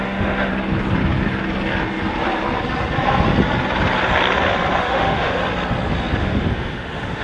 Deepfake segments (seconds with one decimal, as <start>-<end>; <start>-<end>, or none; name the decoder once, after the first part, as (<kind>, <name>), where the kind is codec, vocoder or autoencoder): 0.0-0.5 (autoencoder, DAC-VAE); 4.8-5.4; 6.2-7.2